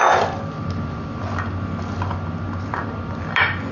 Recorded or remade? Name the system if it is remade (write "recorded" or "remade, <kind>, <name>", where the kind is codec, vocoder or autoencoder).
remade, vocoder, BigVGAN v2